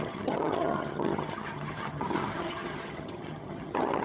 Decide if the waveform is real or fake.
fake